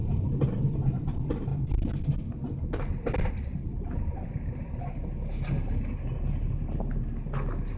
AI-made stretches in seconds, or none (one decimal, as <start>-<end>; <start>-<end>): 0.0-0.6; 3.7-4.8